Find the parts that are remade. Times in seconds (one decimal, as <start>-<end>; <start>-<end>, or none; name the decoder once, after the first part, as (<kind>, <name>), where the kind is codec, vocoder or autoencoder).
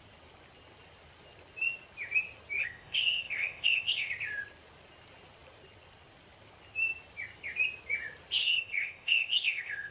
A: 2.6-4.1 (codec, ZipCodec); 8.4-9.9